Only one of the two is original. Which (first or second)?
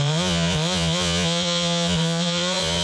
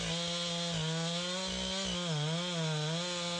second